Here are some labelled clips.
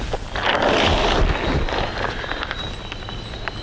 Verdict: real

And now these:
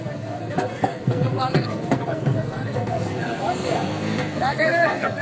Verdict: fake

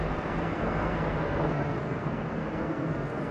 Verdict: fake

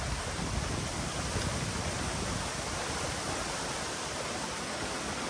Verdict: real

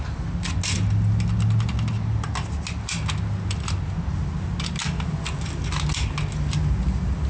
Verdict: real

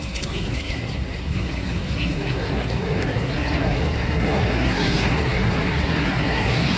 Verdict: fake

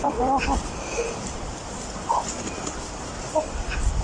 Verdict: real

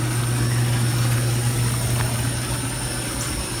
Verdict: real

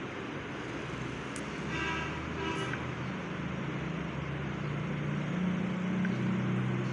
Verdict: real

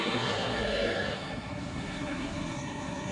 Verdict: fake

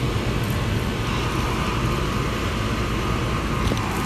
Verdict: real